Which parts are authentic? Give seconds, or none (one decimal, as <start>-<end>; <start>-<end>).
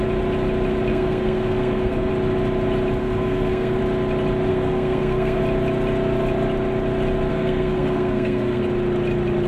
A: 0.0-0.9; 2.1-3.0; 3.8-4.5; 5.4-7.3; 8.6-9.5